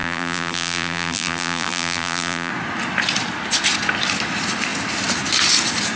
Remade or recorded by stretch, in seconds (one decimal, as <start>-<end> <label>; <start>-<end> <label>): 0.0-2.5 remade; 2.5-6.0 recorded